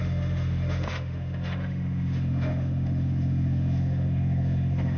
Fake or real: fake